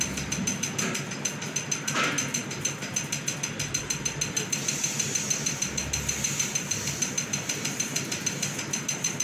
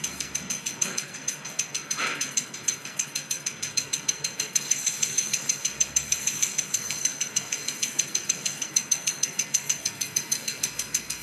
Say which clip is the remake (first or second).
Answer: second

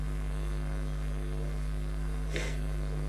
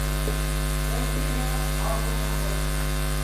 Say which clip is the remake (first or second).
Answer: first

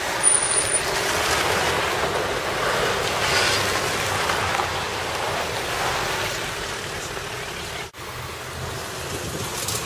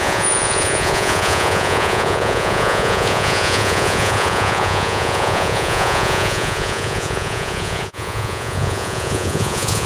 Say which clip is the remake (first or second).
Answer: second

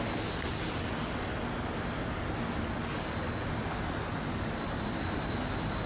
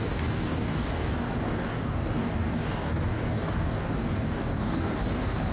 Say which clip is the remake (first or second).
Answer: second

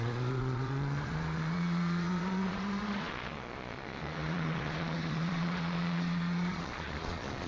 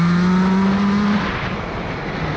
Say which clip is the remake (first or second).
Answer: first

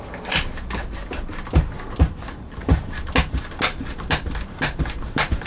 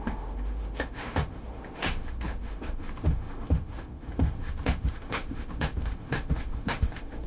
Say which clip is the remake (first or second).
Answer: second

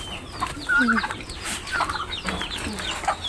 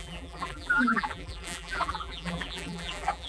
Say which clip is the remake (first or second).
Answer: second